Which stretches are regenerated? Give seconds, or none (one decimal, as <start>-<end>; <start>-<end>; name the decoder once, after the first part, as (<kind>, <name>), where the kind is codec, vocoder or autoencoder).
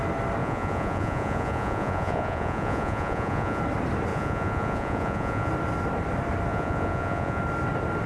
0.4-3.6 (vocoder, Vocos); 4.1-5.5; 6.5-7.4